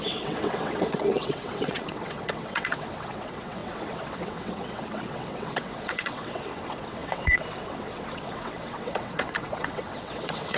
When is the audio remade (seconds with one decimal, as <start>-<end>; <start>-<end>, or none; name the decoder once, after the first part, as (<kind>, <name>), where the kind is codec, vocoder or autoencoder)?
0.0-10.6 (vocoder, WaveNeXt)